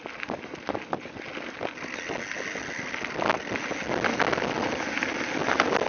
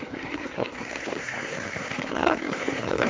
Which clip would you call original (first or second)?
first